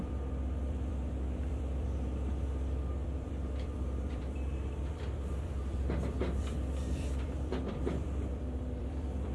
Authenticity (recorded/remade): remade